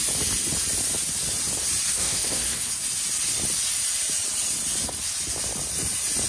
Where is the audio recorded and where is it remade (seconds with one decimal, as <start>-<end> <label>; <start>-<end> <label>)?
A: 0.0-1.9 recorded; 1.9-2.7 remade; 2.7-6.3 recorded